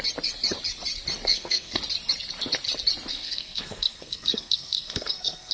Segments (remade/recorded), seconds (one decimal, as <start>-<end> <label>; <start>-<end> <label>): 0.0-1.3 recorded; 1.3-1.8 remade; 1.8-3.1 recorded; 3.1-5.5 remade